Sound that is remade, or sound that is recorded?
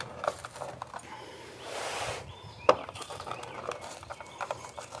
remade